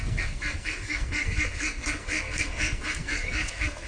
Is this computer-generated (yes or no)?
yes